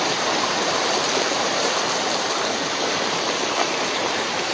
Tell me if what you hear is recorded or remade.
remade